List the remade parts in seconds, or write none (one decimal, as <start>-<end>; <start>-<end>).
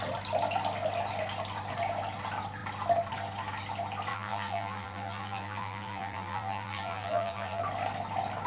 4.1-7.6